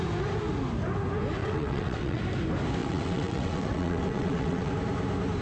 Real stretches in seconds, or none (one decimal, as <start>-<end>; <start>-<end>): 0.0-1.4; 2.2-2.8; 4.7-5.4